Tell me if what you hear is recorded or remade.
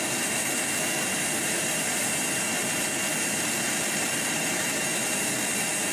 remade